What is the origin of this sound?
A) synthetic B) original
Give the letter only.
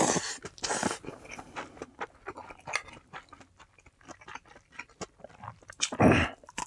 B